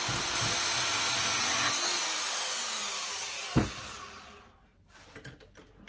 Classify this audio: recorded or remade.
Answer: recorded